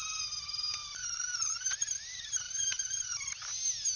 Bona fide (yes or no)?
yes